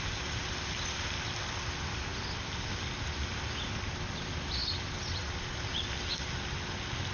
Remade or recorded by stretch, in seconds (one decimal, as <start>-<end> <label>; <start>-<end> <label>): 0.0-7.1 recorded